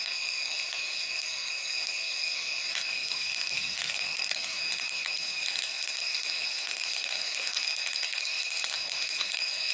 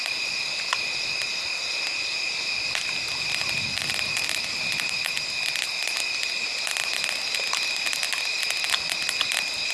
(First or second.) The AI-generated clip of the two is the first